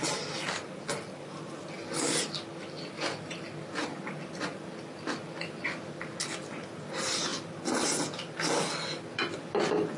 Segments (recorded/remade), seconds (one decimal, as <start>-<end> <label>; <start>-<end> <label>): 0.0-10.0 recorded